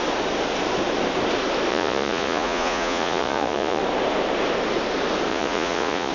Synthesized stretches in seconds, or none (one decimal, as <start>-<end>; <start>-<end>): 1.7-3.8; 5.3-6.1